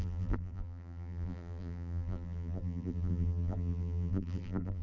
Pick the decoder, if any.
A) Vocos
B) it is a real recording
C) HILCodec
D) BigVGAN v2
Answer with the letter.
D